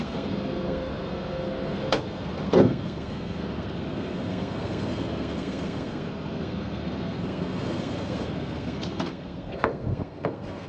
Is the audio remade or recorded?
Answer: remade